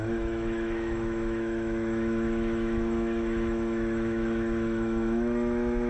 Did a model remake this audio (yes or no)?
yes